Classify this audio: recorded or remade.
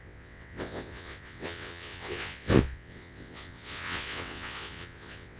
remade